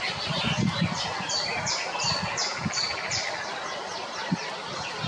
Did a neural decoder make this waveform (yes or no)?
yes